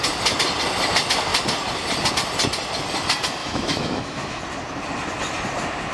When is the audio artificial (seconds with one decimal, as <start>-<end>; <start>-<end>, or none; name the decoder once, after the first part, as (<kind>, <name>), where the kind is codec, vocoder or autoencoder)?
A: 3.4-4.4 (autoencoder, DAC-VAE)

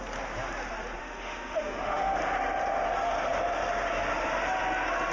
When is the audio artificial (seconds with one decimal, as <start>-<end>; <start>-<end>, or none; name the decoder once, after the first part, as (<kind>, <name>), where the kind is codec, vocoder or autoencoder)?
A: 1.0-2.2 (autoencoder, DAC-VAE)

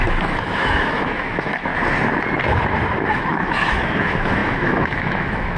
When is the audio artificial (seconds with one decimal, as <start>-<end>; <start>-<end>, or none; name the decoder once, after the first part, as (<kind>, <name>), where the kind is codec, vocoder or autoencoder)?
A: 0.0-1.7 (autoencoder, DAC-VAE); 3.1-5.6

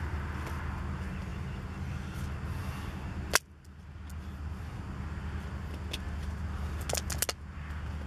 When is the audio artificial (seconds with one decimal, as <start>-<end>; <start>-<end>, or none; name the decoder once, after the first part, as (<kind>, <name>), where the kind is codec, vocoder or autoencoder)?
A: none

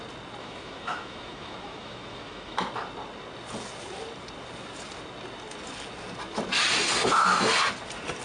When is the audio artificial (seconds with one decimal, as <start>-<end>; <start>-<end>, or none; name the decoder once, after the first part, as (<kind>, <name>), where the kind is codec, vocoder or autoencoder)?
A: 0.4-2.6 (autoencoder, DAC-VAE)

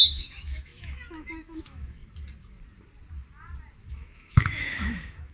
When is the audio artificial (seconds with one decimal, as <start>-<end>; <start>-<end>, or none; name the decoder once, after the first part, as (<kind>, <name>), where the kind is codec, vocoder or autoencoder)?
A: 0.0-2.0 (autoencoder, DAC-VAE); 3.9-5.3

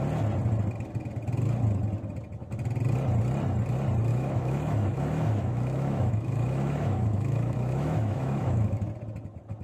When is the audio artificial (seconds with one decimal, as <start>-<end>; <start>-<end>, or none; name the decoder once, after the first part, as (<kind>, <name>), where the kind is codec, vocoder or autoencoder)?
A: 4.1-8.9 (autoencoder, DAC-VAE)